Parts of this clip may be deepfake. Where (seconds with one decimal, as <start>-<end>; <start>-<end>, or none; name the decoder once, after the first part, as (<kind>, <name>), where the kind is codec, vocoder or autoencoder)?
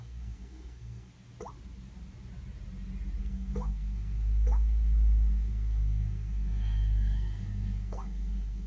0.0-1.1 (codec, SNAC); 3.2-8.7